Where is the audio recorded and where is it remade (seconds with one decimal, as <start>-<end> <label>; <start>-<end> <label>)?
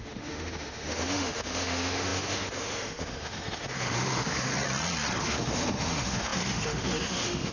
0.0-4.5 remade; 4.5-5.2 recorded; 5.2-7.5 remade